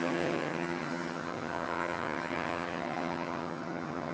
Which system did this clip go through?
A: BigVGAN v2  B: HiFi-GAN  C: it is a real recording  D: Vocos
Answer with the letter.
B